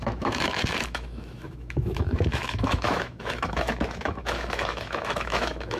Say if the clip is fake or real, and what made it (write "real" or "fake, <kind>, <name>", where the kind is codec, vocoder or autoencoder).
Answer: fake, autoencoder, DAC-VAE